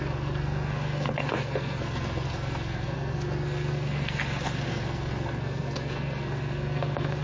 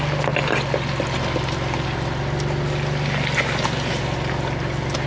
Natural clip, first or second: second